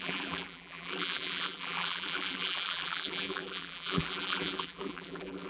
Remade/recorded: remade